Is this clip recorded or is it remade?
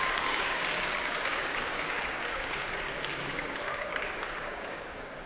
remade